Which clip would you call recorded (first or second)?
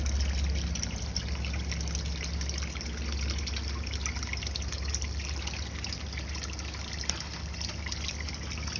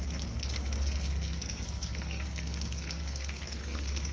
first